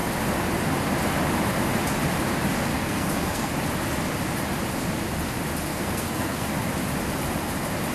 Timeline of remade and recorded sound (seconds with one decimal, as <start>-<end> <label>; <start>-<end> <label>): 0.0-2.7 recorded; 2.7-3.5 remade; 3.5-5.7 recorded; 5.7-6.5 remade; 6.5-7.9 recorded